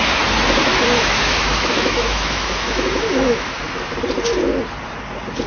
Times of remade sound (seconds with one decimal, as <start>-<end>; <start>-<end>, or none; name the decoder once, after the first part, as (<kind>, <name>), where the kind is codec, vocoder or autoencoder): 0.6-3.9 (autoencoder, DAC-VAE)